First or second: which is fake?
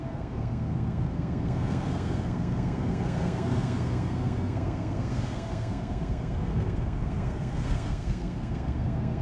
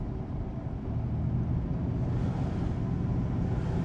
first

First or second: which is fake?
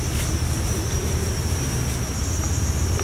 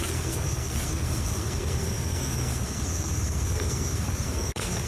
second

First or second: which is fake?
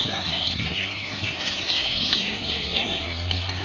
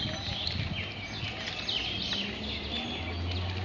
first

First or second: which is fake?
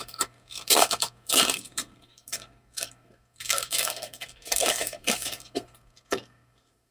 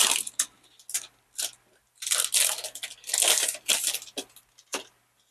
first